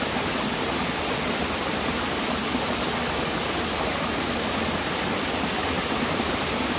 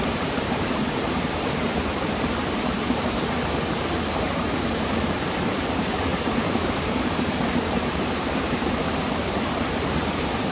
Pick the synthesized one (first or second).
second